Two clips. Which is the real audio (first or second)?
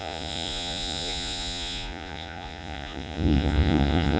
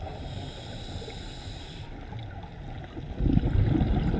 second